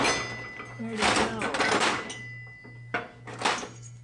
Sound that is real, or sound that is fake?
real